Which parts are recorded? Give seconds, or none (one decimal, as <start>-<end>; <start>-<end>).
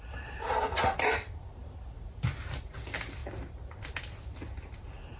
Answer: 0.0-5.2